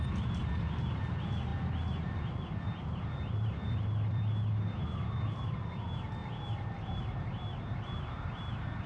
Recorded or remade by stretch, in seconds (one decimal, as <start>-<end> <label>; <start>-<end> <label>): 0.0-1.5 recorded; 1.5-4.2 remade; 4.2-8.9 recorded